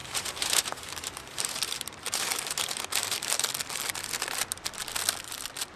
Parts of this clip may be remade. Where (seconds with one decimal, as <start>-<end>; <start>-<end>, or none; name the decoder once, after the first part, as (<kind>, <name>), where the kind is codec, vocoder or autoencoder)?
0.0-3.5 (vocoder, BigVGAN v2)